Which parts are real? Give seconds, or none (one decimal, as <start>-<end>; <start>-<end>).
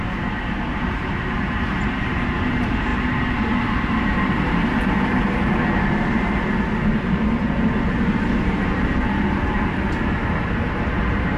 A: none